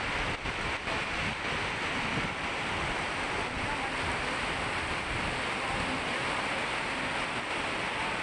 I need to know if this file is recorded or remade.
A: recorded